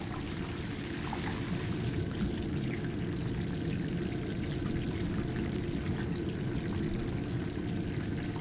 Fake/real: real